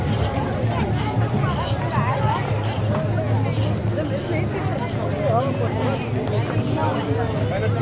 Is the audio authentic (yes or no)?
yes